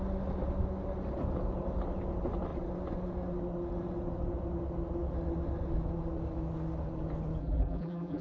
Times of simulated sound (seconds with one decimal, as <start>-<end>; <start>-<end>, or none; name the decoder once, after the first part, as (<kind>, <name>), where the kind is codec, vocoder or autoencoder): 7.4-8.2 (vocoder, BigVGAN v2)